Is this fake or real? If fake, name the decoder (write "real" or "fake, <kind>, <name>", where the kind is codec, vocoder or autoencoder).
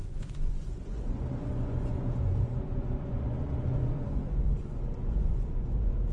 fake, vocoder, Vocos